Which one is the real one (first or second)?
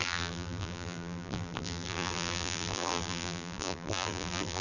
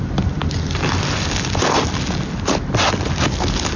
second